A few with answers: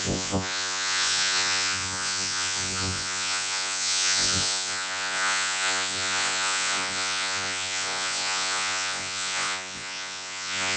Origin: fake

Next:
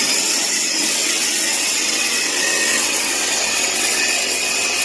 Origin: fake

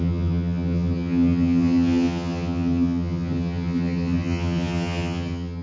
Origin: fake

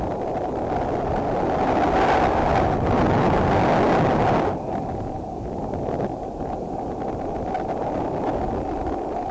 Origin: real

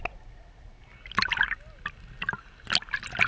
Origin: real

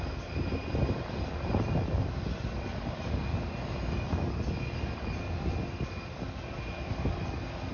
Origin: real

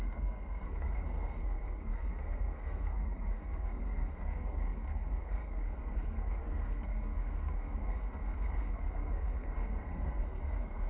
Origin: fake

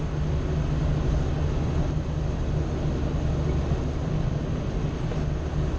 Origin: real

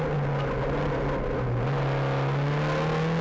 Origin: real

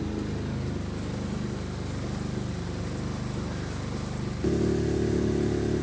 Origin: real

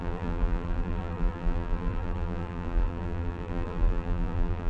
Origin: fake